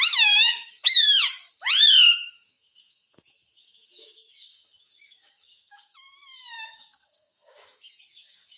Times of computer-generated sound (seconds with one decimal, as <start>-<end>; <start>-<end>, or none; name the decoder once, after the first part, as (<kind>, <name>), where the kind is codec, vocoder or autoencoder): 0.0-1.4 (autoencoder, DAC-VAE); 2.0-8.6